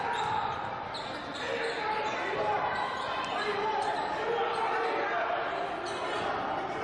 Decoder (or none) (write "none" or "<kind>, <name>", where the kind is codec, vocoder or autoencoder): none